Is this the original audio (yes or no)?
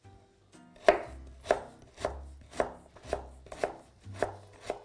yes